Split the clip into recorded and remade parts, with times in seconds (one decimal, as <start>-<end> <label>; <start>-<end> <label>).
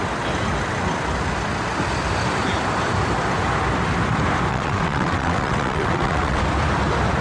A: 0.0-4.5 recorded; 4.5-6.4 remade; 6.4-7.2 recorded